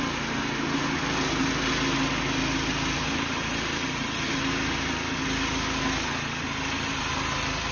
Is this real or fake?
real